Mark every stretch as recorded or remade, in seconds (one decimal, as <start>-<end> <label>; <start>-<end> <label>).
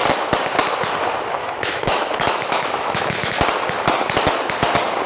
0.0-1.4 recorded; 1.4-3.4 remade; 3.4-5.1 recorded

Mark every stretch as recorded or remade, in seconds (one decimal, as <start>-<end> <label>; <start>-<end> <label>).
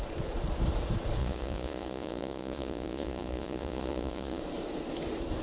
0.0-1.2 recorded; 1.2-4.4 remade; 4.4-5.4 recorded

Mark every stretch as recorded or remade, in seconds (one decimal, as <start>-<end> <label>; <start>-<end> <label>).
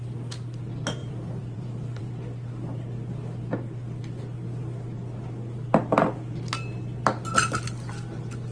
0.0-1.0 recorded; 1.0-2.1 remade; 2.1-8.5 recorded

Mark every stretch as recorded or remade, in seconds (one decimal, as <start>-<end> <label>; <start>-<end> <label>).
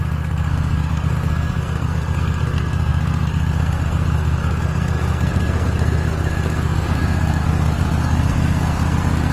0.0-9.3 remade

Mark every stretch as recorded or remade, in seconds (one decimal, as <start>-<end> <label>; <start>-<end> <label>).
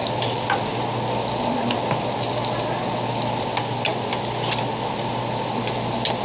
0.0-6.2 recorded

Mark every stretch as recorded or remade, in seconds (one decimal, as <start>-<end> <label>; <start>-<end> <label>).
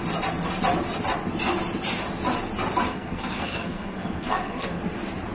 0.0-2.9 recorded; 2.9-4.8 remade; 4.8-5.3 recorded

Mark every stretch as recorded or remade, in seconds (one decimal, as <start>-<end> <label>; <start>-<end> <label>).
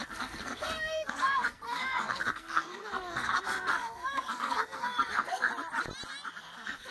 0.0-5.5 remade; 5.5-6.4 recorded; 6.4-6.9 remade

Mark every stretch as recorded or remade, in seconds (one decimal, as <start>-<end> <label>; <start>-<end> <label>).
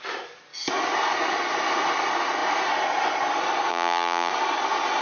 0.0-3.7 recorded; 3.7-4.3 remade; 4.3-5.0 recorded